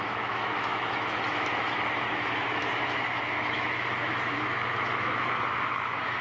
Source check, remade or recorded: remade